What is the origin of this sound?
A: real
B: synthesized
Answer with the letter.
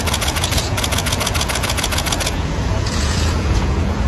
B